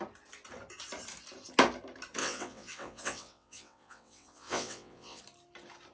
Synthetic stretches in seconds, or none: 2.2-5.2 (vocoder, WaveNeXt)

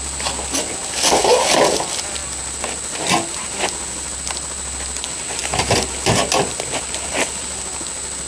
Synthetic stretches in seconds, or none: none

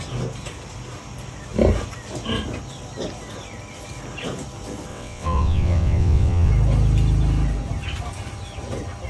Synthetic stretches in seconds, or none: 4.9-6.5 (vocoder, WaveNeXt)